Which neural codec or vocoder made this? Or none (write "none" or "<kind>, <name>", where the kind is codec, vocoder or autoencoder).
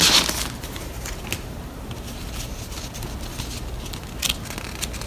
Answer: none